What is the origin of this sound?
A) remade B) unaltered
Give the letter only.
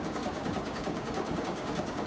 A